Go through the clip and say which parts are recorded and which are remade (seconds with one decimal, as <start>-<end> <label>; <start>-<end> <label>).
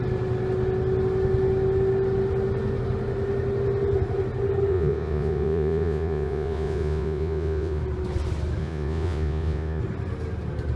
0.0-4.7 recorded; 4.7-7.8 remade; 7.8-8.6 recorded; 8.6-9.8 remade; 9.8-10.8 recorded